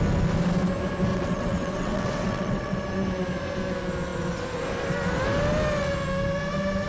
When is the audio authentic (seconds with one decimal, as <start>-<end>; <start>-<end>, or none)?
0.0-1.1; 2.8-6.9